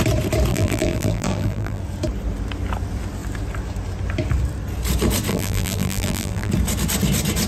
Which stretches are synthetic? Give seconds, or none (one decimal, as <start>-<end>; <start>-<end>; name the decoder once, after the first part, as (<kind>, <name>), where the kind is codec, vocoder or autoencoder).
0.5-1.8 (vocoder, BigVGAN v2); 5.3-6.5